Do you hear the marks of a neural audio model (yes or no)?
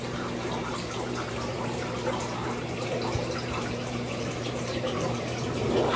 yes